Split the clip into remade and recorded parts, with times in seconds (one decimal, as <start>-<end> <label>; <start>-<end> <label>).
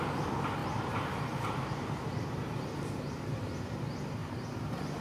0.0-0.6 recorded; 0.6-3.6 remade; 3.6-4.2 recorded; 4.2-5.0 remade